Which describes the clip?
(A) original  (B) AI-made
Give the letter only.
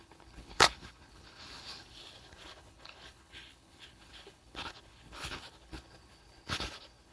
B